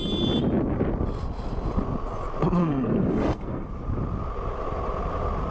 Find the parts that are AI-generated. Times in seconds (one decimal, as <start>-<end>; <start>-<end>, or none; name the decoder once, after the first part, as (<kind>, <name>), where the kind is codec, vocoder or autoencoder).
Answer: 2.6-3.7 (codec, SNAC)